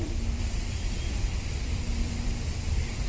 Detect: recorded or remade remade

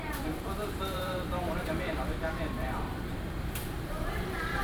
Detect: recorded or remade remade